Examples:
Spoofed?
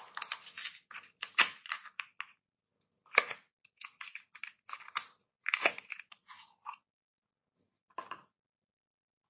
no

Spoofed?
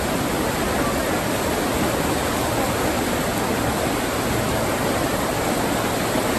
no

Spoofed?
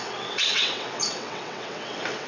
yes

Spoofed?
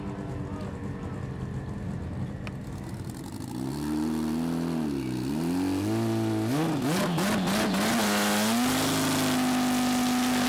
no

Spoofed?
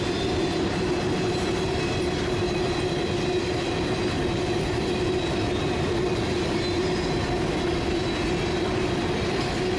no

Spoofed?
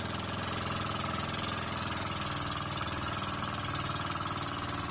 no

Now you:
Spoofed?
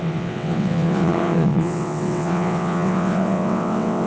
yes